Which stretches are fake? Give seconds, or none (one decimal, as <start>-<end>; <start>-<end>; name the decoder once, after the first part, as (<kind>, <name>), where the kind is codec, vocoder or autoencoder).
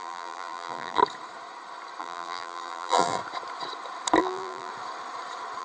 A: 0.0-1.0 (vocoder, BigVGAN v2); 2.0-3.2; 4.2-4.7